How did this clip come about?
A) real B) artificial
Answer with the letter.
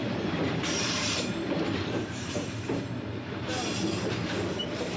B